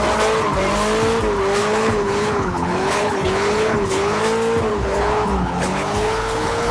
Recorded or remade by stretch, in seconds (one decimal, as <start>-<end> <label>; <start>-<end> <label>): 0.0-1.6 recorded; 1.6-4.2 remade; 4.2-4.7 recorded; 4.7-6.7 remade